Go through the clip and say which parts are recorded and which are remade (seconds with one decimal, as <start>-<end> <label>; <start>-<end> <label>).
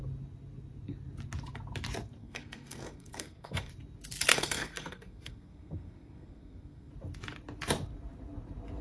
0.0-2.2 recorded; 2.2-3.7 remade; 3.7-4.3 recorded; 4.3-6.9 remade; 6.9-8.8 recorded